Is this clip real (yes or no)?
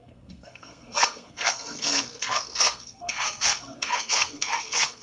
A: no